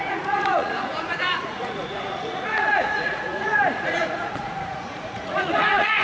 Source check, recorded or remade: remade